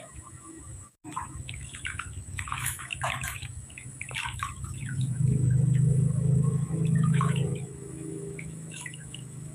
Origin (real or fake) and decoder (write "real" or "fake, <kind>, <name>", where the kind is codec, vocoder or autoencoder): fake, autoencoder, DAC-VAE